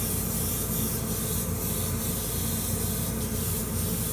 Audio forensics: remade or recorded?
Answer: recorded